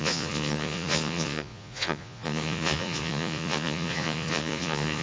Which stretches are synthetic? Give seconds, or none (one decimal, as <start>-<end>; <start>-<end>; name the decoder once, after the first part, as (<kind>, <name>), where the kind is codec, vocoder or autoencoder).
0.0-5.0 (vocoder, Vocos)